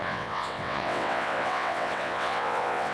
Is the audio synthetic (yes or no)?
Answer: yes